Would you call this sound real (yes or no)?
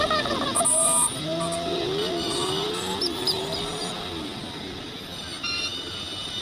yes